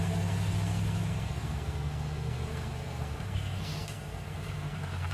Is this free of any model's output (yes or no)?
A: no